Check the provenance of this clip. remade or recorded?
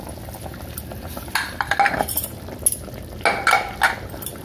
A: recorded